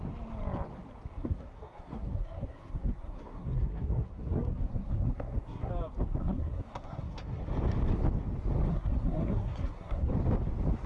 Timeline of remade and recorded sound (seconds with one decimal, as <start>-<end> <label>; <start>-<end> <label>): 0.0-1.1 recorded; 1.1-5.7 remade; 5.7-6.2 recorded; 6.2-7.4 remade; 7.4-8.7 recorded; 8.7-10.1 remade; 10.1-10.9 recorded